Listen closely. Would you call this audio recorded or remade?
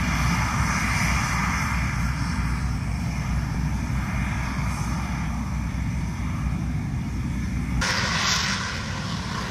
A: recorded